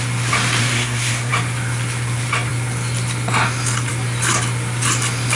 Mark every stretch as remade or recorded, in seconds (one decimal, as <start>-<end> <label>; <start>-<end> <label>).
0.0-0.6 recorded; 0.6-1.3 remade; 1.3-5.4 recorded